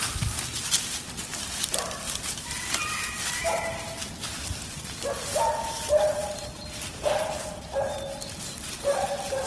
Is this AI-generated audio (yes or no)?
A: no